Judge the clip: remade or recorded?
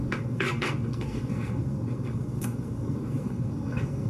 remade